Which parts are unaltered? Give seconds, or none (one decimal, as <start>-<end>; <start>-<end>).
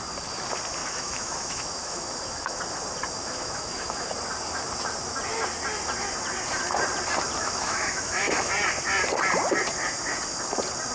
0.0-0.8; 2.6-3.2; 4.1-7.4; 8.5-10.9